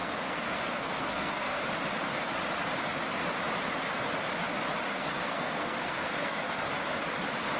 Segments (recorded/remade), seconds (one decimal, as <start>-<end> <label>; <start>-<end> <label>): 0.0-1.6 remade; 1.6-4.9 recorded; 4.9-6.6 remade; 6.6-7.6 recorded